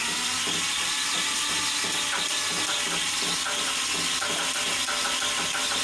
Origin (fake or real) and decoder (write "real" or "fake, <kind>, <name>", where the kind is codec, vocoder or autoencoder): real